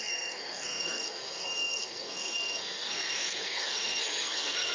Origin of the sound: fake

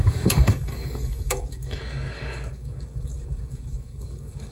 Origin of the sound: fake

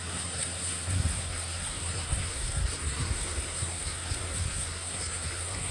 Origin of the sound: fake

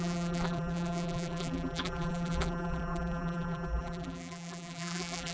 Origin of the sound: fake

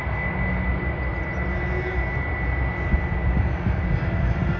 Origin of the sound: real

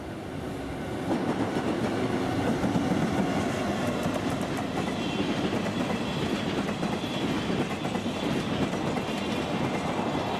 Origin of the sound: real